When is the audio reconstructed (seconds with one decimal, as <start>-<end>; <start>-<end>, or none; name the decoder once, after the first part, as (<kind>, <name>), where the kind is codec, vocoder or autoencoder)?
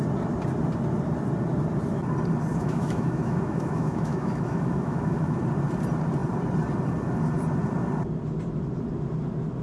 2.5-5.4 (autoencoder, DAC-VAE)